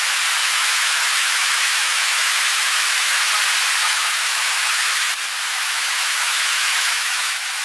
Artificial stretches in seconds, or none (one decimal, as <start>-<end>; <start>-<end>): 0.4-3.3; 3.8-5.1; 5.5-7.6